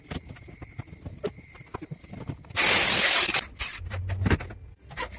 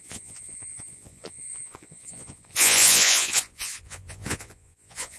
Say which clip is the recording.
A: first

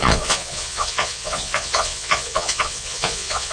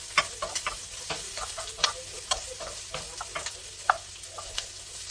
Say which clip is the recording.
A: second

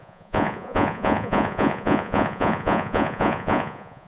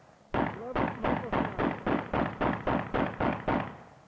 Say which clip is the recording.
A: second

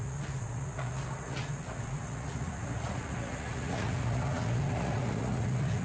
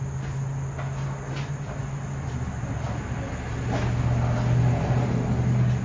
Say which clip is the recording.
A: second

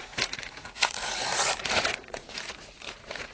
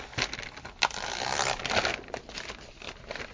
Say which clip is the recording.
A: second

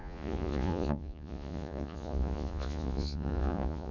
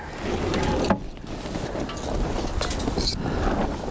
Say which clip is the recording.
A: second